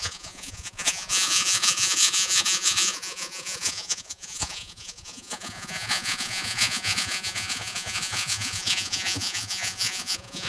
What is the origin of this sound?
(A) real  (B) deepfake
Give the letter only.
B